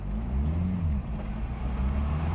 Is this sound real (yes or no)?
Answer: yes